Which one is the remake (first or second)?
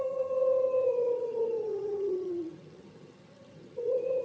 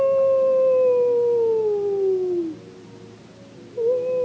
first